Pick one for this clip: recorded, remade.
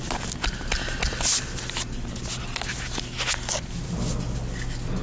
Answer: recorded